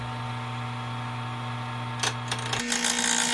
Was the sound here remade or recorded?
recorded